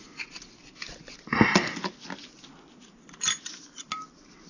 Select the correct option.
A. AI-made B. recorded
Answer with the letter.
B